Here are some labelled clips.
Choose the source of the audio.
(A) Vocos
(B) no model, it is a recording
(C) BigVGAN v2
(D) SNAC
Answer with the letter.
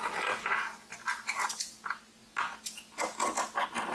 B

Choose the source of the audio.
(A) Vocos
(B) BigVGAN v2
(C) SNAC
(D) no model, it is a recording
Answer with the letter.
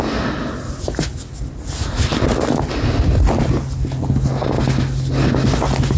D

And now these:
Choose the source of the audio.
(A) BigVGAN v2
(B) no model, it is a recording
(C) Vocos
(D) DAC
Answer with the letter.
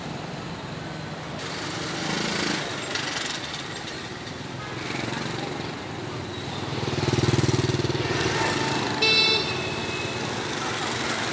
B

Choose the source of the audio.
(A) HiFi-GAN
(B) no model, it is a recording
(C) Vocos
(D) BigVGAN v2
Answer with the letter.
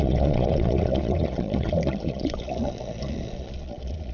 C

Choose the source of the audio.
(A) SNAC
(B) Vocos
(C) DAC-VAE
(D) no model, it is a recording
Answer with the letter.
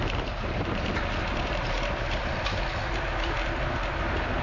D